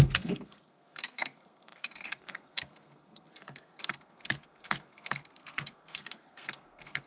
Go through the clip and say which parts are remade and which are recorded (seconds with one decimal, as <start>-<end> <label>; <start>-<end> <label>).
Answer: 0.0-7.1 remade